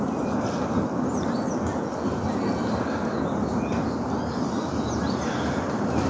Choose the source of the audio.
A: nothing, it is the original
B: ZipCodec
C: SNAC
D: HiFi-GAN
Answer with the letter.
A